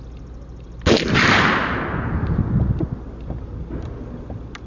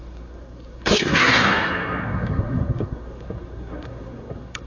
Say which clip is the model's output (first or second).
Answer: second